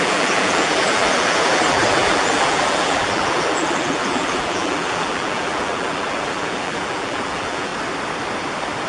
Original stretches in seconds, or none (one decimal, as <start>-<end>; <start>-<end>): 7.7-8.9